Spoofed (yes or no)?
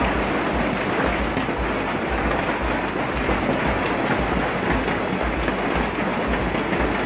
no